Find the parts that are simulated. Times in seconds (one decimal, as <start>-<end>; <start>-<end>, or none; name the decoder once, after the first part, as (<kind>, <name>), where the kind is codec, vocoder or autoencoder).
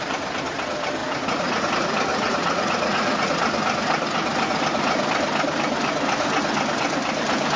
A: 1.0-1.7 (vocoder, Vocos); 2.1-3.3